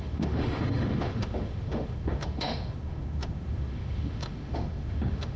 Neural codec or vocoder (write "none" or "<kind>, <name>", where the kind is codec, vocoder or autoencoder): autoencoder, DAC-VAE